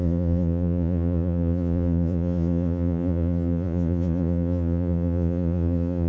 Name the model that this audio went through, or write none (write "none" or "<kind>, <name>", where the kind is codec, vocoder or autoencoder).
vocoder, Vocos